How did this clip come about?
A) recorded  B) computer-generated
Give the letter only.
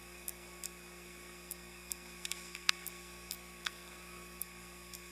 B